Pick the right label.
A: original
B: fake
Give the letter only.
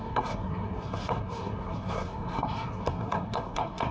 B